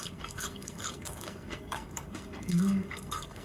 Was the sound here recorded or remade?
remade